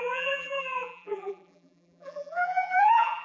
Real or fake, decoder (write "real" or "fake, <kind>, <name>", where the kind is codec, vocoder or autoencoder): fake, vocoder, BigVGAN v2